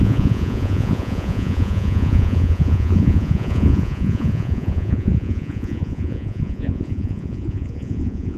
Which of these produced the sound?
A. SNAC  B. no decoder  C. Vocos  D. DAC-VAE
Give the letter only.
C